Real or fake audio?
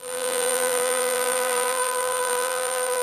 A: fake